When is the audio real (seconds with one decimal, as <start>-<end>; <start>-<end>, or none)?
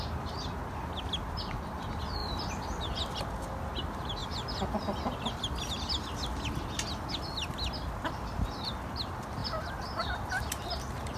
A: 0.0-2.2; 3.2-4.2; 5.6-9.4; 10.4-11.2